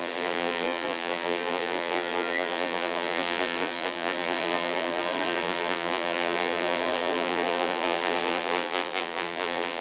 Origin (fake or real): fake